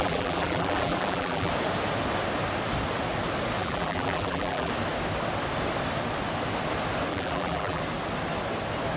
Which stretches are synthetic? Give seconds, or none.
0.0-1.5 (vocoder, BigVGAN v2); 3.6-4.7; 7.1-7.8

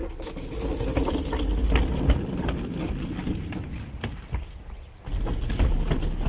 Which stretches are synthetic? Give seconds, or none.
none

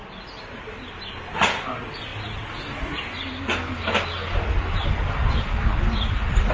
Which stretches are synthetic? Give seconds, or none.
none

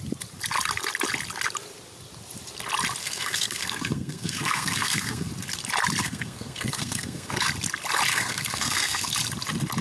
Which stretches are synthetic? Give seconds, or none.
3.0-5.3 (codec, SNAC); 6.0-7.5; 8.1-9.1